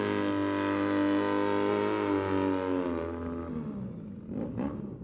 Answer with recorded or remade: recorded